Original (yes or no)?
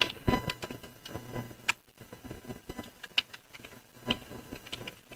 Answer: yes